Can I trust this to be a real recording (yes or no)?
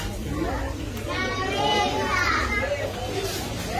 yes